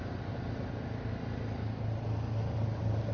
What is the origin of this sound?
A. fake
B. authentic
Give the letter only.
B